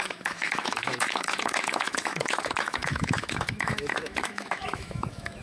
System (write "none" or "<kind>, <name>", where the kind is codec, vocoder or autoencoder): autoencoder, DAC-VAE